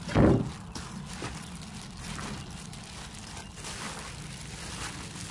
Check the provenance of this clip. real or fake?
real